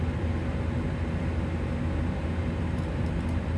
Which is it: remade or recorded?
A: recorded